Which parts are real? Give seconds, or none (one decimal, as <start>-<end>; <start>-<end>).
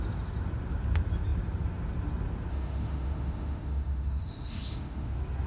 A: 0.0-2.5; 5.1-5.5